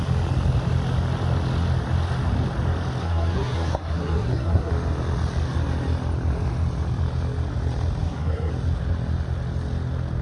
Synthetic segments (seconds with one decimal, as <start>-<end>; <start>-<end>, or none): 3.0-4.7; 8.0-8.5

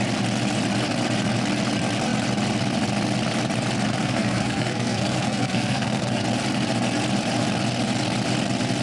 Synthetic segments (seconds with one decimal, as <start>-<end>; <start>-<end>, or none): 4.0-6.2

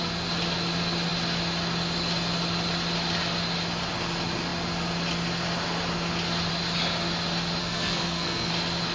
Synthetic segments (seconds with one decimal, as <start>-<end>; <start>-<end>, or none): 7.6-8.5

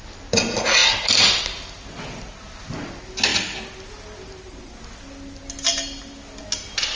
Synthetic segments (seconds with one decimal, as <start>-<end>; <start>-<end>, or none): none